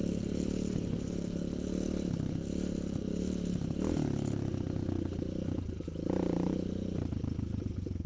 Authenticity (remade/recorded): recorded